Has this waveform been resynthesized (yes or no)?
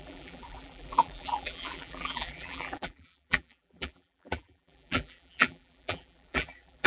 yes